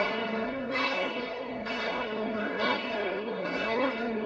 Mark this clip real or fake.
fake